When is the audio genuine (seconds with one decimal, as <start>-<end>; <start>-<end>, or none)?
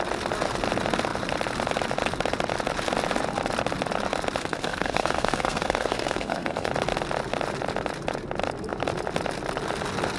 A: 0.0-4.4; 6.7-10.2